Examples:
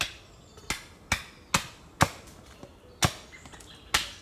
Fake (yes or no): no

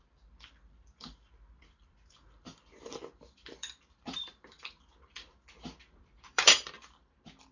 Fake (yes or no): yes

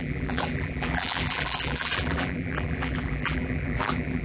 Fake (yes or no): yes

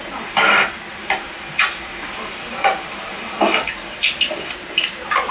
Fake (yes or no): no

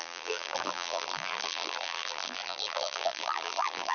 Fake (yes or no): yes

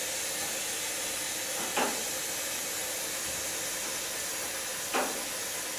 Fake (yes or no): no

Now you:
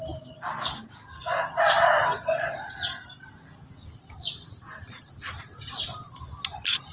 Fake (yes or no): no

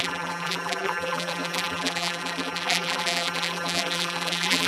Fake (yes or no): yes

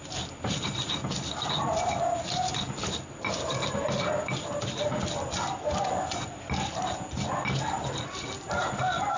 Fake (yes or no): no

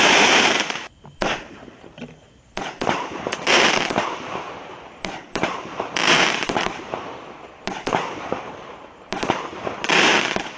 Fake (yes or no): yes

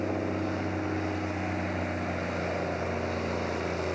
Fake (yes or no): no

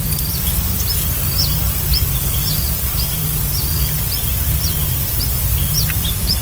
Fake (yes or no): yes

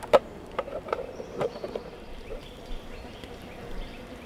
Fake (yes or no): yes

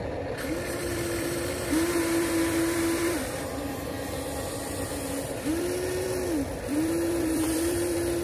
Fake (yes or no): yes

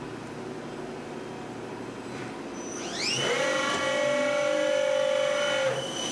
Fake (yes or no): no